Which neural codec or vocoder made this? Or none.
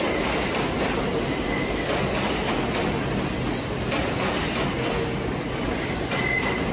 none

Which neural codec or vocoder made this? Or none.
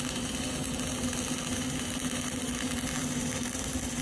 none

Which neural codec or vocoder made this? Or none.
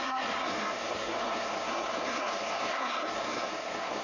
codec, SNAC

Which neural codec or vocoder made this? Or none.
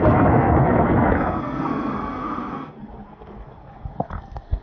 codec, SNAC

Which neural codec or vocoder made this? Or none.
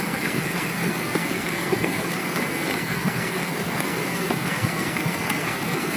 codec, SNAC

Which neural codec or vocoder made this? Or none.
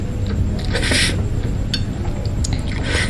none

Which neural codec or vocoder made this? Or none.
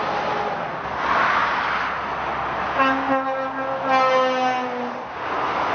none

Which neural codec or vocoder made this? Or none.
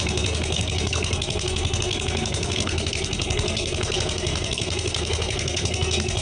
codec, SNAC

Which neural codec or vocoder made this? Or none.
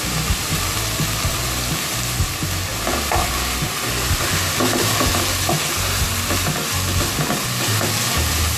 none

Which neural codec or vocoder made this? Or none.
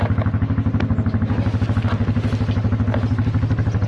none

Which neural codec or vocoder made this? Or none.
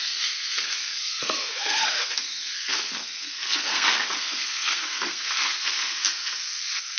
codec, SNAC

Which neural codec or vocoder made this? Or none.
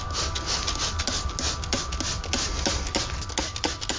none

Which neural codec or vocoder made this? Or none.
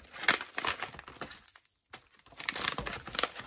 none